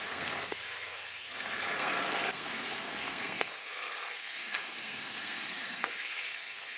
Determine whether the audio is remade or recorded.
remade